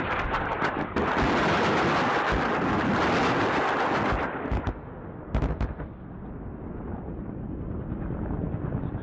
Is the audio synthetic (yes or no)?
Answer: no